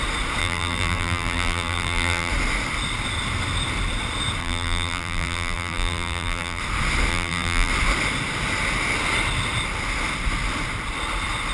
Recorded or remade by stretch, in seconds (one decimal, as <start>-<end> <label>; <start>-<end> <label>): 0.0-0.4 recorded; 0.4-2.3 remade; 2.3-4.4 recorded; 4.4-6.6 remade; 6.6-7.1 recorded; 7.1-7.7 remade; 7.7-11.5 recorded